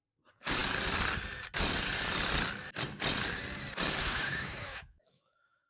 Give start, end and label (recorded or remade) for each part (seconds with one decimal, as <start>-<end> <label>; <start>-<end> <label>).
0.0-4.0 recorded; 4.0-5.7 remade

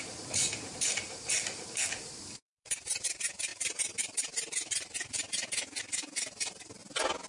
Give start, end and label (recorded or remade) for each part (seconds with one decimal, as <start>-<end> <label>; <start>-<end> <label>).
0.0-6.8 remade; 6.8-7.3 recorded

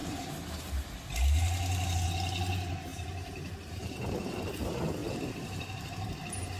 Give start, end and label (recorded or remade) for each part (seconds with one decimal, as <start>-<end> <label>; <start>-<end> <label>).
0.0-0.7 remade; 0.7-2.9 recorded; 2.9-4.5 remade; 4.5-5.0 recorded; 5.0-6.6 remade

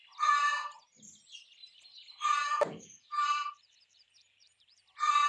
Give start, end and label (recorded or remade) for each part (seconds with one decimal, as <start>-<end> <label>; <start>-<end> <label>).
0.0-0.5 recorded; 0.5-1.1 remade; 1.1-1.6 recorded; 1.6-4.8 remade; 4.8-5.3 recorded